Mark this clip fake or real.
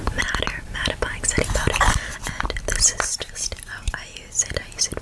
real